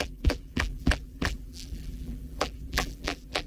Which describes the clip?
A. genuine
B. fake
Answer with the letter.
B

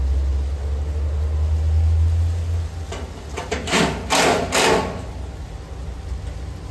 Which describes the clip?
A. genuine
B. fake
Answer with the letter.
A